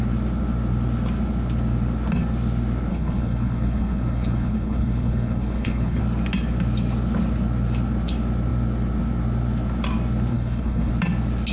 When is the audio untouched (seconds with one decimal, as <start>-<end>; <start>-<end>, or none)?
0.0-2.9; 6.0-10.3; 10.9-11.5